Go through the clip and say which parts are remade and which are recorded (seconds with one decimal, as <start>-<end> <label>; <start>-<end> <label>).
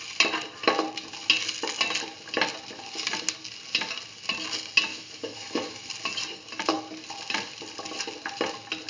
0.0-4.9 recorded; 4.9-5.9 remade; 5.9-8.9 recorded